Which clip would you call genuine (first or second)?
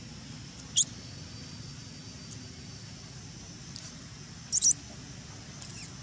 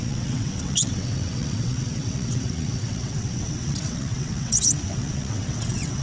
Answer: first